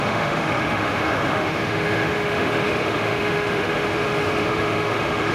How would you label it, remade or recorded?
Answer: remade